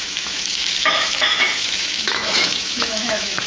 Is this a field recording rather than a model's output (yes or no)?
no